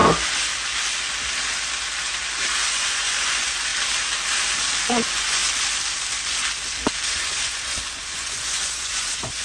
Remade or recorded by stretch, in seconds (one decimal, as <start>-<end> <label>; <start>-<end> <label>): 0.0-2.7 recorded; 2.7-3.7 remade; 3.7-4.9 recorded; 4.9-5.4 remade; 5.4-7.1 recorded; 7.1-9.4 remade